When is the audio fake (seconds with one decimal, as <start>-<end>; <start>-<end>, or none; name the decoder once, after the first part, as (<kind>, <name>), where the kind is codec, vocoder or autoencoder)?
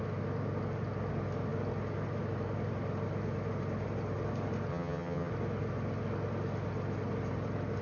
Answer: 4.7-5.3 (vocoder, HiFi-GAN)